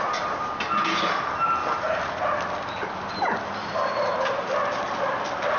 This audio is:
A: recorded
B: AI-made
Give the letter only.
A